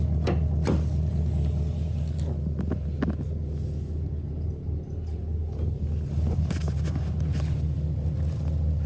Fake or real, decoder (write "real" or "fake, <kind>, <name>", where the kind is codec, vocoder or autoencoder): real